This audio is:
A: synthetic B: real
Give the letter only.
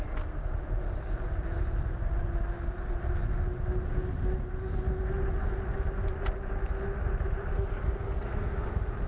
B